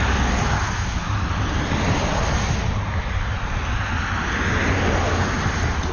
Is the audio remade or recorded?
recorded